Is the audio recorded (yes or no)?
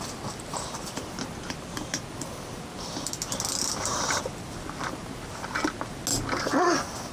yes